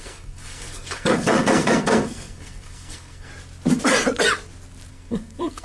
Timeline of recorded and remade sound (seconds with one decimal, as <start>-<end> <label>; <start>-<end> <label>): 0.0-3.3 remade; 3.3-4.9 recorded; 4.9-5.6 remade